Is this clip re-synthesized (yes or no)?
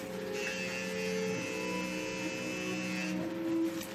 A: no